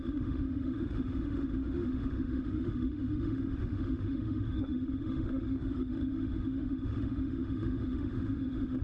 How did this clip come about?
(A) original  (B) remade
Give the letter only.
B